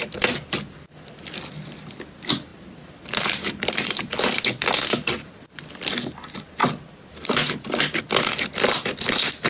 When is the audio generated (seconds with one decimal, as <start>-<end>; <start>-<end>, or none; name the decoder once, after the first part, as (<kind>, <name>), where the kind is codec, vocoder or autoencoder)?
2.5-4.0 (vocoder, BigVGAN v2)